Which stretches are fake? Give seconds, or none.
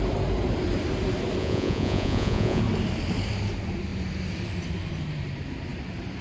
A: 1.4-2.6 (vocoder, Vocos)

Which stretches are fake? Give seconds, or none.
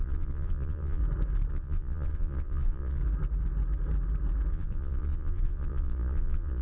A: 0.0-1.0 (vocoder, Vocos); 1.5-3.0; 4.5-6.6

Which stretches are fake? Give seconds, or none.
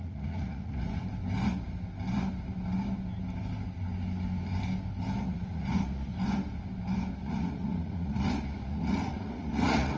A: 0.0-1.0 (vocoder, Vocos); 5.2-6.1; 7.2-10.0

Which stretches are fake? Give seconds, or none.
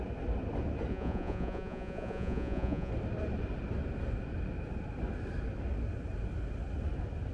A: 0.9-2.9 (vocoder, Vocos)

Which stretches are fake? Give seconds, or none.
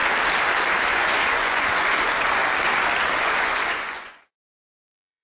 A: 0.9-2.4 (vocoder, Vocos); 3.2-5.2